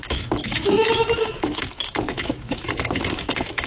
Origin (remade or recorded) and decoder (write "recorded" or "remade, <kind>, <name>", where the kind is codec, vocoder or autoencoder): remade, autoencoder, DAC-VAE